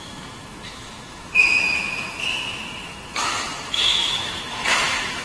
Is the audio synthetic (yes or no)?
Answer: yes